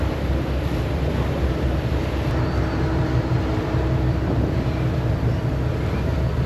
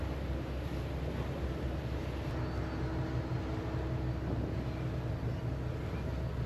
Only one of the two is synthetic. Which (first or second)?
first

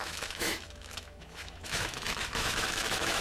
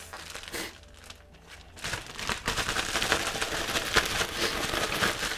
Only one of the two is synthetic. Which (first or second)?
first